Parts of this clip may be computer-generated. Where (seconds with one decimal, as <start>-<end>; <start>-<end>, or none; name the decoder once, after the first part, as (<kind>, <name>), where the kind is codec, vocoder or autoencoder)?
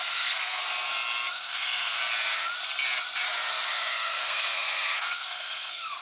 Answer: 0.0-0.6 (codec, SNAC); 1.3-2.0; 3.9-6.0